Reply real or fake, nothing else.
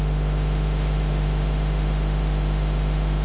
fake